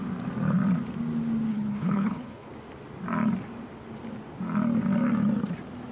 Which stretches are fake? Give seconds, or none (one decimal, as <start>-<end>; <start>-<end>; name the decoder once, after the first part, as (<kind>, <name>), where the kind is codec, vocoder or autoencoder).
1.5-2.5 (codec, HILCodec)